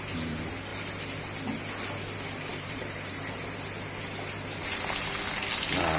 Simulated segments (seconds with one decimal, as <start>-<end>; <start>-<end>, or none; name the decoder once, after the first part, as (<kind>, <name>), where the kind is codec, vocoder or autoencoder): 2.5-3.2 (vocoder, BigVGAN v2)